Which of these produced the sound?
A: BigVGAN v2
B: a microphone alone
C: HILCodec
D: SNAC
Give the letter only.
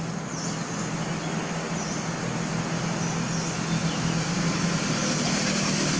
B